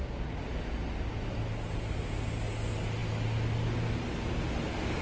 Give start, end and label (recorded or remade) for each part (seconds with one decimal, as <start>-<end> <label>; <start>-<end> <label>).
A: 0.0-5.0 recorded